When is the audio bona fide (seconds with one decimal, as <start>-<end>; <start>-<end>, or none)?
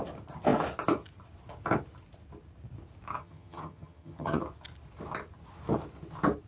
0.0-3.2; 4.4-6.5